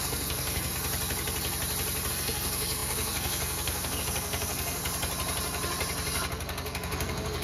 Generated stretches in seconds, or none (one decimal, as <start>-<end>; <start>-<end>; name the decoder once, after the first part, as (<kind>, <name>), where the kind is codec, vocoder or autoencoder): 0.0-0.7 (codec, SNAC); 2.1-4.8; 6.3-7.4